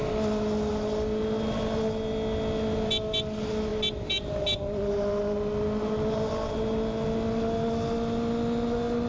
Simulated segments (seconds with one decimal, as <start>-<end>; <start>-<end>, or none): none